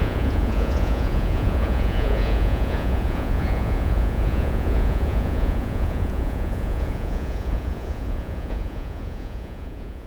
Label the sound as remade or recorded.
remade